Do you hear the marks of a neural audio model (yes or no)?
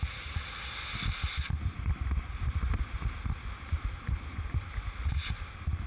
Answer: no